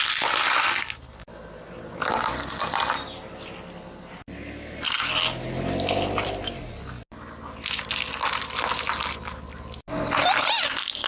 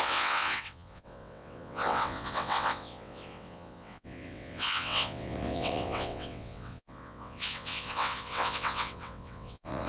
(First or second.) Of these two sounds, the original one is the first